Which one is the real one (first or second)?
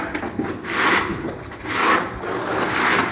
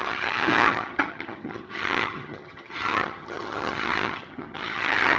first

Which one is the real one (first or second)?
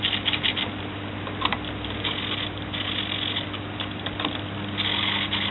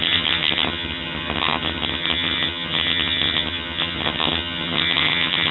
first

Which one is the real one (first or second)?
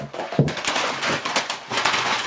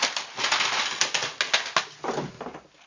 second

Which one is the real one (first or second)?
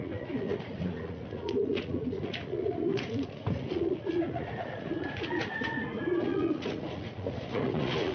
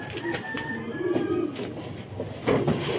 second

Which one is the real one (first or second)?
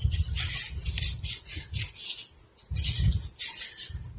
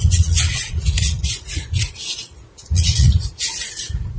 first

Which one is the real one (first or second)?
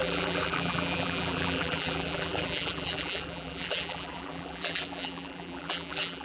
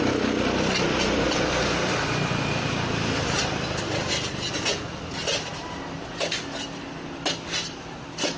second